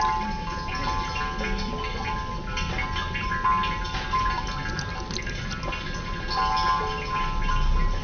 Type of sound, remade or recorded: recorded